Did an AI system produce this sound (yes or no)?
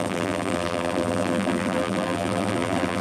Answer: yes